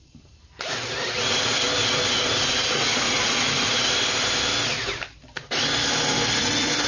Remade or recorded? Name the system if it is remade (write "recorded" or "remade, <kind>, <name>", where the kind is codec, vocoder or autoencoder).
recorded